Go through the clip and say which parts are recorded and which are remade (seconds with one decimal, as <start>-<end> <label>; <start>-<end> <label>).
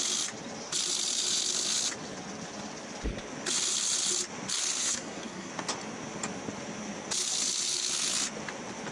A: 0.0-4.8 recorded; 4.8-5.5 remade; 5.5-8.9 recorded